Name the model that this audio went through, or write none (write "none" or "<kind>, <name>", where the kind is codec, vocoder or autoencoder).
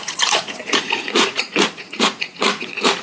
vocoder, Vocos